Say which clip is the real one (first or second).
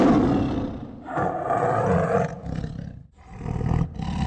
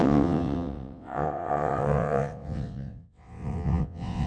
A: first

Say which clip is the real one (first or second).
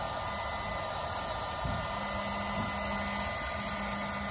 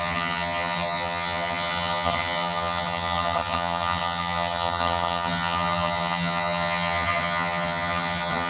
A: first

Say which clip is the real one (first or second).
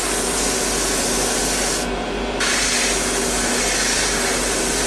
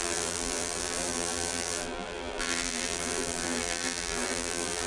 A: first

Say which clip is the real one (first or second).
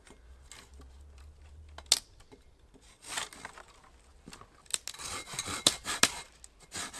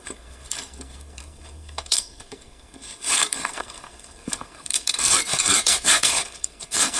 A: first